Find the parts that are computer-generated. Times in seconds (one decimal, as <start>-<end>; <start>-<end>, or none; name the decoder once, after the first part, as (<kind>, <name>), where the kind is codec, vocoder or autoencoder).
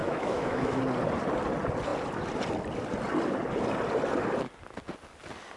0.0-0.8 (autoencoder, DAC-VAE)